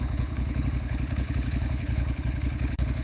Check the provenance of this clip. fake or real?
fake